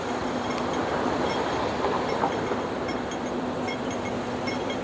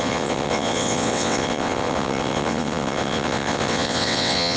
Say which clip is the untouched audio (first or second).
first